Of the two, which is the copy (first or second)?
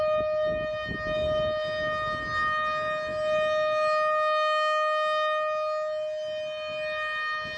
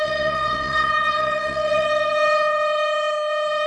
second